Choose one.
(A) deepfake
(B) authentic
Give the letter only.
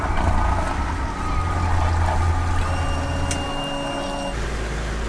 B